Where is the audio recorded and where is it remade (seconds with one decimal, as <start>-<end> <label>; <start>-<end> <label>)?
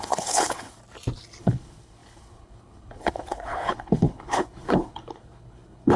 0.0-0.8 remade; 0.8-1.4 recorded; 1.4-6.0 remade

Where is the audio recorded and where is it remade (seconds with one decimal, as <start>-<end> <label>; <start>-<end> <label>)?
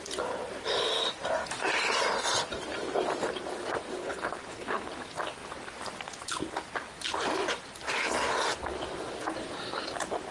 0.0-4.0 recorded; 4.0-4.9 remade; 4.9-10.3 recorded